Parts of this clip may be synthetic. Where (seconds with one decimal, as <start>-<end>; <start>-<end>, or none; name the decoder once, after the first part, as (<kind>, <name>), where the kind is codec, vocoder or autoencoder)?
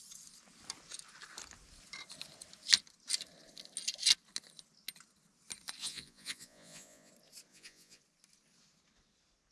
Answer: 5.8-7.1 (vocoder, Vocos); 7.5-8.0